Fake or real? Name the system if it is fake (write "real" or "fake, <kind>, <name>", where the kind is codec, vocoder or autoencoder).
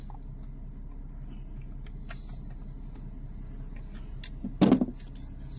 real